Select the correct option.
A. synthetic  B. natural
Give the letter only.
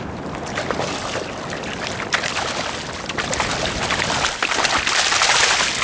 B